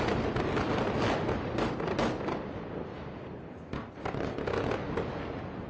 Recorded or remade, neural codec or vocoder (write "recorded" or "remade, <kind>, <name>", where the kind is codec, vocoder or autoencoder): recorded